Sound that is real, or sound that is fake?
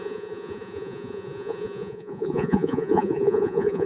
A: fake